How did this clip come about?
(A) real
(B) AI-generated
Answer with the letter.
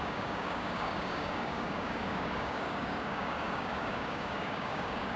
B